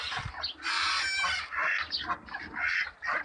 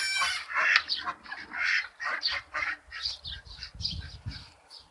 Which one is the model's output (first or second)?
second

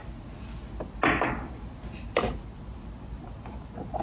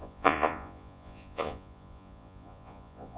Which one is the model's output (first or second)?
second